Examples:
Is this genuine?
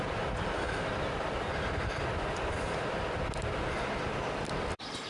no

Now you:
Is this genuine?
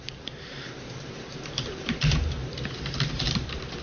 no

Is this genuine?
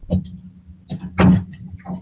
yes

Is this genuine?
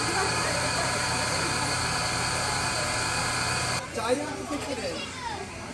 no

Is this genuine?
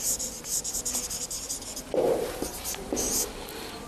yes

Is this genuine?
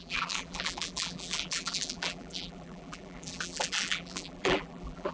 no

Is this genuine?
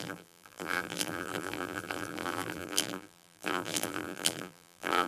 no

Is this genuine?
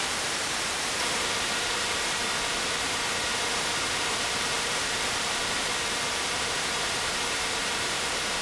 no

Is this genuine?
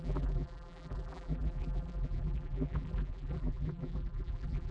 no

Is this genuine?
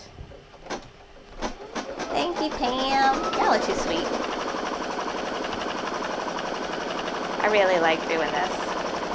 yes